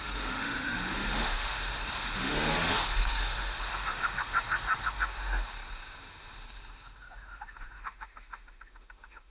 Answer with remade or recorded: remade